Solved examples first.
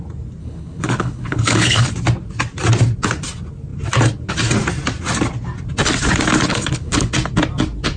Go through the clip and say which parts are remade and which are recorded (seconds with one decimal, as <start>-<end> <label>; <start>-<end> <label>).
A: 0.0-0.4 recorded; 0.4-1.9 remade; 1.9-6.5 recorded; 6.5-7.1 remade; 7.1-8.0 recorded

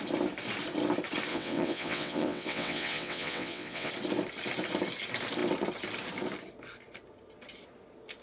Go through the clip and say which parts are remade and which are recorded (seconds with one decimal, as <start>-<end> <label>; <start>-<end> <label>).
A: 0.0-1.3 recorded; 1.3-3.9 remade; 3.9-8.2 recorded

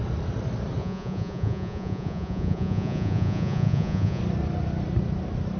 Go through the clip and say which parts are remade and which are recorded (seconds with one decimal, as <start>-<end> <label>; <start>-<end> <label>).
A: 0.0-0.8 recorded; 0.8-4.2 remade; 4.2-5.6 recorded